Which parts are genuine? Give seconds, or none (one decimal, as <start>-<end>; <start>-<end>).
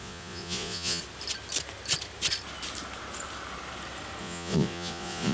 1.0-4.2